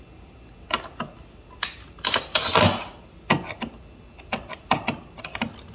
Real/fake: real